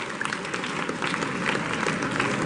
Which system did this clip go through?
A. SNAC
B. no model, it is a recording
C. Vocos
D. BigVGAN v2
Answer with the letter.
B